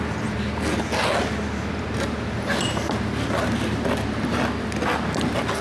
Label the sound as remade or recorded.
recorded